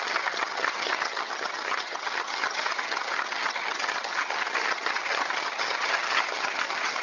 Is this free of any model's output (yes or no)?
no